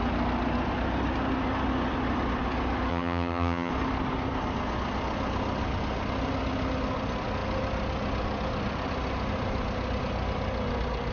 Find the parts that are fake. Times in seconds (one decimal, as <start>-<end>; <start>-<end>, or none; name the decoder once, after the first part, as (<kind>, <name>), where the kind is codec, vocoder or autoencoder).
2.9-3.7 (vocoder, HiFi-GAN)